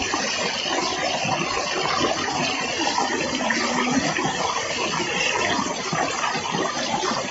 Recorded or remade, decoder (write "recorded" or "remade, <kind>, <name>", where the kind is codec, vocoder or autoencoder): recorded